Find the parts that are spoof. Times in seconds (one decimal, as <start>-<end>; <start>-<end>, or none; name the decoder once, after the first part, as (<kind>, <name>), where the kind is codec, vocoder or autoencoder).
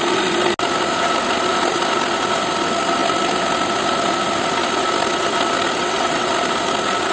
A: 5.8-6.3 (vocoder, WaveNeXt)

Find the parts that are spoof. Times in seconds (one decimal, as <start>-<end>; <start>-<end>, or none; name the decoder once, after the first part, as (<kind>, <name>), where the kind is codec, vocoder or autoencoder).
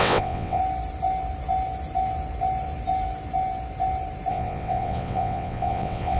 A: 0.0-0.6 (vocoder, WaveNeXt); 4.3-6.2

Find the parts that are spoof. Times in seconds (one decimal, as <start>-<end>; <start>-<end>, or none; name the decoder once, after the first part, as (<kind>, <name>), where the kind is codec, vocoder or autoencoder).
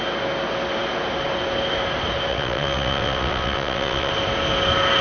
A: 2.3-4.1 (vocoder, WaveNeXt)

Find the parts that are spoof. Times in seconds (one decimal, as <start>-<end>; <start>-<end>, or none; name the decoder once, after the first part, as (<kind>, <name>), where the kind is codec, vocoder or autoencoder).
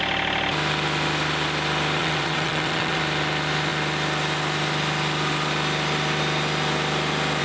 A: 2.0-3.0 (vocoder, WaveNeXt)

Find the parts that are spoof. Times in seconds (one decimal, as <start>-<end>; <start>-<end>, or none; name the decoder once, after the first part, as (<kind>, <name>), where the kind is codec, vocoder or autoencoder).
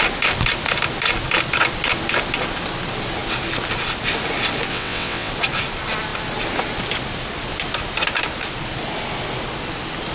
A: 4.7-5.3 (vocoder, WaveNeXt)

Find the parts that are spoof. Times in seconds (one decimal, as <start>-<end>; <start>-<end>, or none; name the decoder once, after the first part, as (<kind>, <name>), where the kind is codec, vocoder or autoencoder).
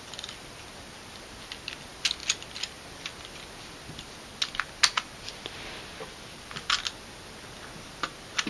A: none